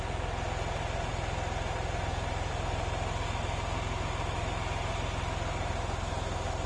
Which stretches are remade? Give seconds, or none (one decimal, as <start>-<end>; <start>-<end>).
none